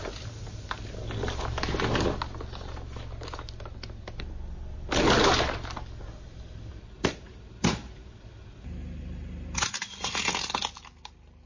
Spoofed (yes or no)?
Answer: no